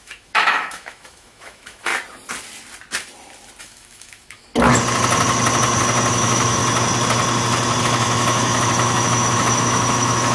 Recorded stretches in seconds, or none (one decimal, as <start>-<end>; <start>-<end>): 1.9-3.6; 4.4-6.1; 6.6-7.8